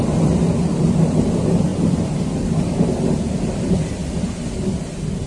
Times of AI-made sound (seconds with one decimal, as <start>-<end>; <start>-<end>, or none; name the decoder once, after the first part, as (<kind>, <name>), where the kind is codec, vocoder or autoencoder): none